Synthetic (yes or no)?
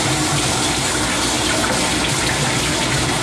no